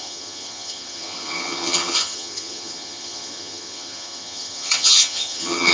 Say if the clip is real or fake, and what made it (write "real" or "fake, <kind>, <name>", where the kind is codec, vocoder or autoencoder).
fake, vocoder, HiFi-GAN